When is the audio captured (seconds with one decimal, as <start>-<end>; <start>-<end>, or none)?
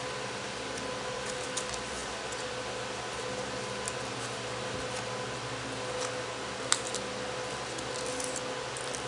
0.0-9.1